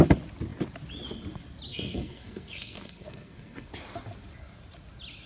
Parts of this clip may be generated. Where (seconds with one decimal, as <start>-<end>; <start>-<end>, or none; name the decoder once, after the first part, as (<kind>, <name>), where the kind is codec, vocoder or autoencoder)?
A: 1.7-3.7 (codec, SNAC)